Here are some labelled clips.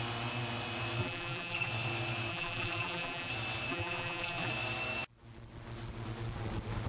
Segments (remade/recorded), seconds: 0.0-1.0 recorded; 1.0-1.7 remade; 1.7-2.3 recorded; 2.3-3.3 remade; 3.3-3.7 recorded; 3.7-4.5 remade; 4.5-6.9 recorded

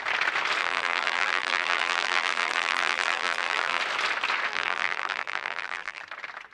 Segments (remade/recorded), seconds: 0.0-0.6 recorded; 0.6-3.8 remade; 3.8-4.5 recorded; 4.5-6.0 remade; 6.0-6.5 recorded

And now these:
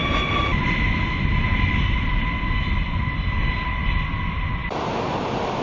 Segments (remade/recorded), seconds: 0.0-4.6 recorded; 4.6-5.6 remade

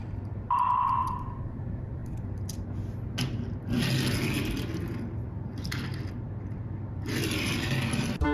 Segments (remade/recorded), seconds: 0.0-2.0 remade; 2.0-6.9 recorded; 6.9-8.3 remade

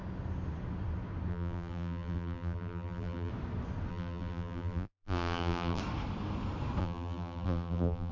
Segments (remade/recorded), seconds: 0.0-1.3 recorded; 1.3-3.3 remade; 3.3-3.9 recorded; 3.9-5.8 remade; 5.8-6.8 recorded; 6.8-8.1 remade

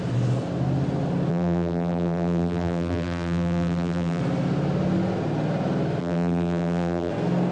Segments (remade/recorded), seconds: 0.0-1.3 recorded; 1.3-4.2 remade; 4.2-6.0 recorded; 6.0-7.1 remade; 7.1-7.5 recorded